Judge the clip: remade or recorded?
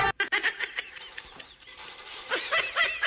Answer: remade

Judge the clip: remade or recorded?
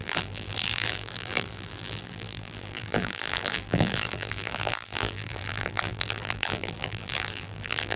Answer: remade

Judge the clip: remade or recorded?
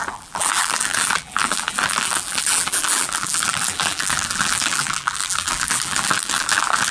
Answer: remade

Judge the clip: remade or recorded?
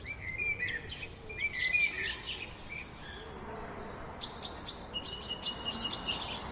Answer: recorded